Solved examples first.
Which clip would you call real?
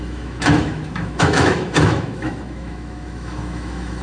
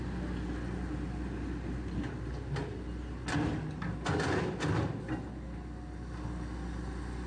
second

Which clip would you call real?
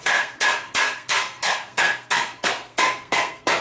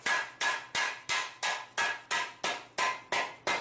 second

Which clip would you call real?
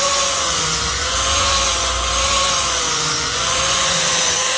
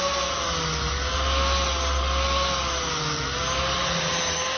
second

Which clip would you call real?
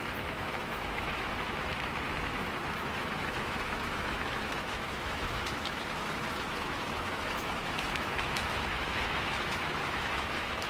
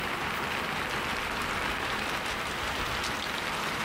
second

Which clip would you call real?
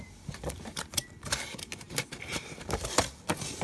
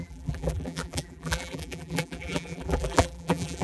first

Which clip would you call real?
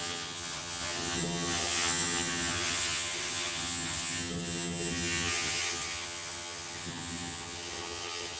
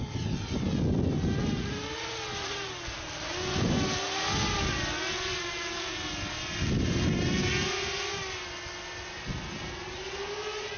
second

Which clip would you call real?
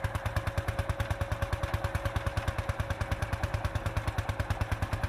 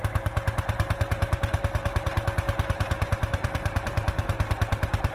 first